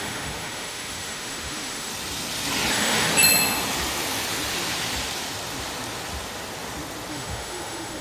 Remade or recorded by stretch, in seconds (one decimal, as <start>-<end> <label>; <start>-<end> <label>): 0.0-1.9 remade; 1.9-2.7 recorded; 2.7-3.1 remade; 3.1-7.1 recorded; 7.1-8.0 remade